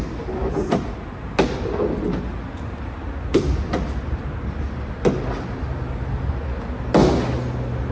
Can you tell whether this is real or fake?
real